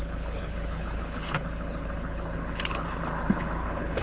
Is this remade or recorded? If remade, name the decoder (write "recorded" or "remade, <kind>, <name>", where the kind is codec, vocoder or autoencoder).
remade, codec, HILCodec